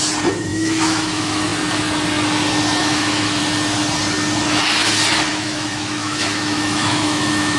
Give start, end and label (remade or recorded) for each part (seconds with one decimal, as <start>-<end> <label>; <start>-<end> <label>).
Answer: 0.0-0.5 recorded; 0.5-1.4 remade; 1.4-2.8 recorded; 2.8-3.4 remade; 3.4-5.3 recorded; 5.3-7.6 remade